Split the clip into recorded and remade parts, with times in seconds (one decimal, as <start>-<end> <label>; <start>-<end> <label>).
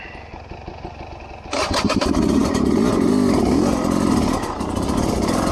0.0-5.5 recorded